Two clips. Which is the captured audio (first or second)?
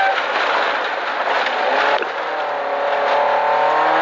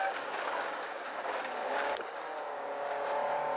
first